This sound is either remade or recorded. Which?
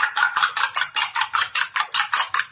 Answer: remade